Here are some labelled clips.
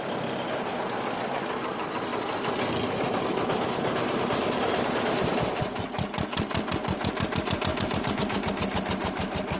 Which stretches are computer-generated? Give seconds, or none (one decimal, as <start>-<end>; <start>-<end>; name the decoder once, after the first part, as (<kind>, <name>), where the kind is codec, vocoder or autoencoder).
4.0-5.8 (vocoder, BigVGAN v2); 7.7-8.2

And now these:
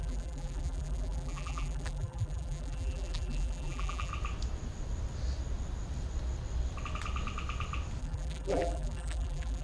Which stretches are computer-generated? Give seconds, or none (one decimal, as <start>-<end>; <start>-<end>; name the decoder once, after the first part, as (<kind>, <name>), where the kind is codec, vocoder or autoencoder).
0.0-4.1 (vocoder, BigVGAN v2); 8.0-9.6

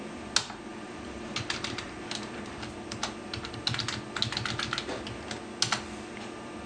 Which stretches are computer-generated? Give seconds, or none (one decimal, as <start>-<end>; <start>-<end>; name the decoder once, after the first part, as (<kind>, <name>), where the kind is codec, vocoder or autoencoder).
0.7-1.9 (vocoder, BigVGAN v2)